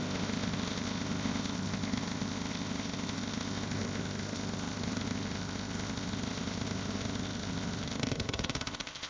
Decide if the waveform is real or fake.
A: fake